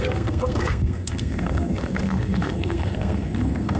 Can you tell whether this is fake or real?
fake